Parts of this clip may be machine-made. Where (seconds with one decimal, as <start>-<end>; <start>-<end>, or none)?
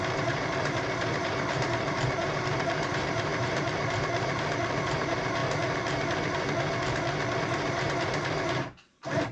0.0-5.4; 7.4-9.3